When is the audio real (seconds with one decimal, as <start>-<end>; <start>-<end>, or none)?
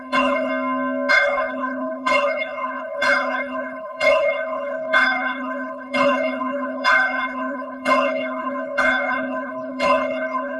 0.5-1.1